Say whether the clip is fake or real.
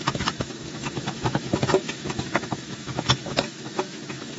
fake